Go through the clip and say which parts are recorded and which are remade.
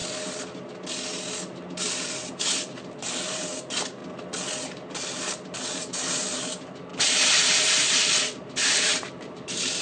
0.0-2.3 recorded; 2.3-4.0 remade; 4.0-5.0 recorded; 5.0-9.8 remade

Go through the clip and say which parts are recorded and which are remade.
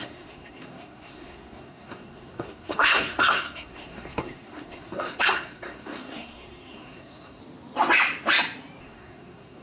0.0-7.4 remade; 7.4-8.8 recorded; 8.8-9.6 remade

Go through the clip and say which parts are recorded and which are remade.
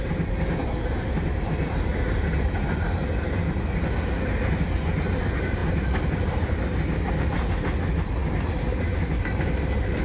0.0-10.0 recorded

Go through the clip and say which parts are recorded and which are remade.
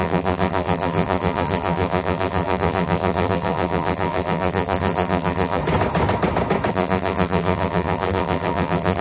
0.0-5.6 remade; 5.6-6.7 recorded; 6.7-9.0 remade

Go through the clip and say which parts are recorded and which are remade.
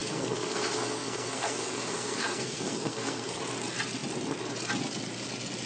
0.0-3.4 remade; 3.4-5.7 recorded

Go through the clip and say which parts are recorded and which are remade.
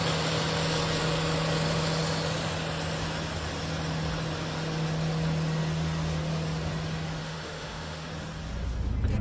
0.0-7.2 recorded; 7.2-8.1 remade; 8.1-9.2 recorded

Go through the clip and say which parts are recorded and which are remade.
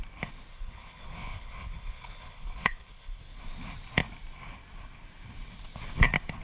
0.0-0.5 recorded; 0.5-3.2 remade; 3.2-6.4 recorded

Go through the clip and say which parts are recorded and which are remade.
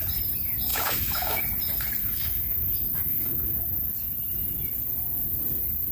0.0-0.7 recorded; 0.7-1.4 remade; 1.4-2.0 recorded; 2.0-3.9 remade; 3.9-5.9 recorded